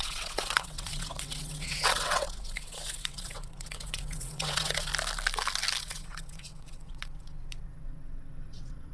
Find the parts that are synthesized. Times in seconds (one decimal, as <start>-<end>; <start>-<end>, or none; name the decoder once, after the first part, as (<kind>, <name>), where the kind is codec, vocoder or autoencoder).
0.0-4.9 (vocoder, WaveNeXt); 5.8-8.9